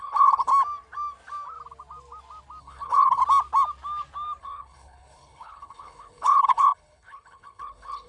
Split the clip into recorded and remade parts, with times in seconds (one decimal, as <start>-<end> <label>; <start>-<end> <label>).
0.0-0.5 remade; 0.5-2.6 recorded; 2.6-3.2 remade; 3.2-4.4 recorded; 4.4-8.1 remade